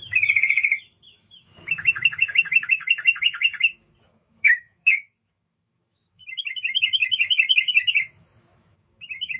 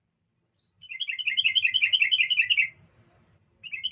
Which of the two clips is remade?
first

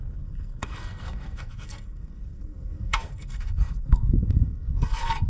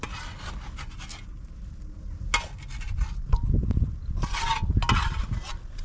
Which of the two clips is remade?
first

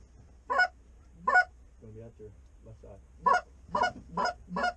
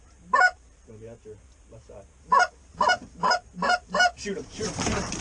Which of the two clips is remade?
second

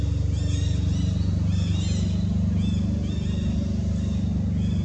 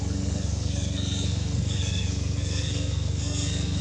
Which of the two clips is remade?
second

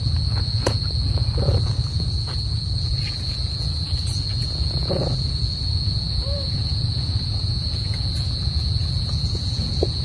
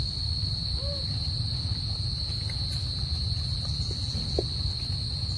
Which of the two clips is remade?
first